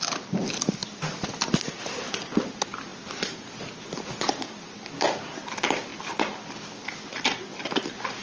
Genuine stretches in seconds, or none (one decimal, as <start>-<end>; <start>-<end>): 0.0-8.2

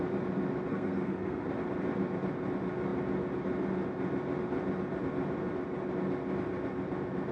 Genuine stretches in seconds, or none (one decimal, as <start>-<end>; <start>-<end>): 0.0-0.7; 1.5-7.3

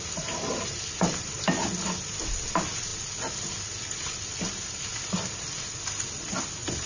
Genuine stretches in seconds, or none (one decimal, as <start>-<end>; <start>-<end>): 0.0-6.9

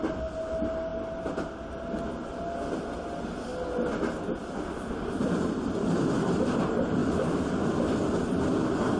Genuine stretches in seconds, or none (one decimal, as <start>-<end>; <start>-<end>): 0.0-9.0

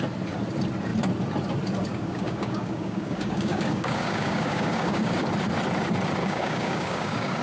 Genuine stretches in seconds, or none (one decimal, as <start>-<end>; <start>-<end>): 0.0-1.9; 5.2-6.2

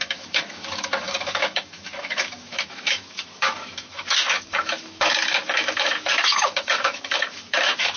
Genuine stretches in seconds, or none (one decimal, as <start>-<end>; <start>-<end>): none